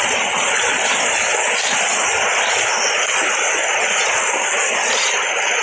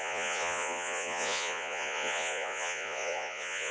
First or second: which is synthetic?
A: second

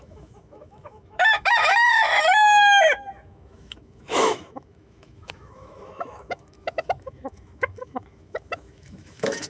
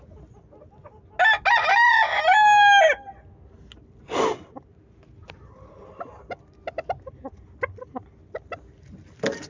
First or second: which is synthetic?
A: first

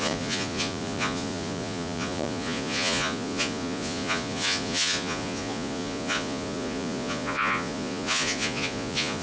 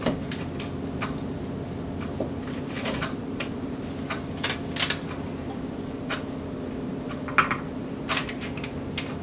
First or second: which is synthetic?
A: first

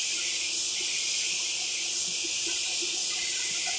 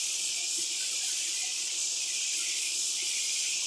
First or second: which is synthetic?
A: second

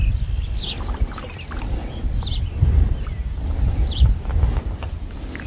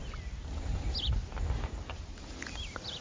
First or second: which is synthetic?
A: first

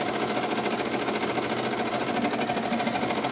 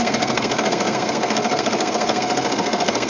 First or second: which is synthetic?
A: second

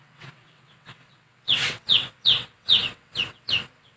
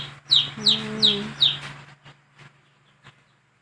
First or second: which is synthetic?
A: first